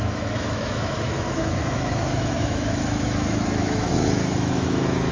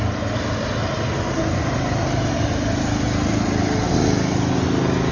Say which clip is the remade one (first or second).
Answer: first